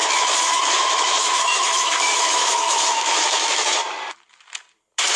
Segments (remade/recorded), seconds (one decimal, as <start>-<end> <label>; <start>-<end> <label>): 0.0-3.8 remade; 3.8-5.2 recorded